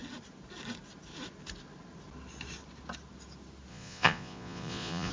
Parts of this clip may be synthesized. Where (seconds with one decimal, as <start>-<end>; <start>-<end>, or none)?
3.7-5.1